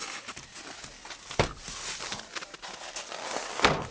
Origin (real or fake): real